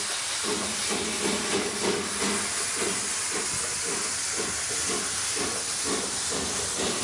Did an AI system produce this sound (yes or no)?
no